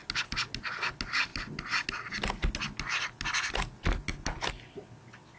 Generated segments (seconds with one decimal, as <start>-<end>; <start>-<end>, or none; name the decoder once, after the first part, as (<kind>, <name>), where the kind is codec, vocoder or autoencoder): none